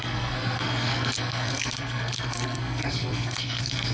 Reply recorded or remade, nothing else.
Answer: remade